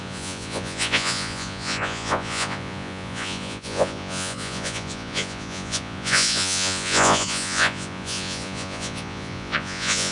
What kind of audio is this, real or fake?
fake